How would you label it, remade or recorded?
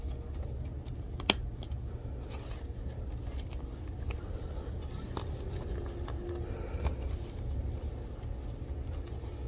recorded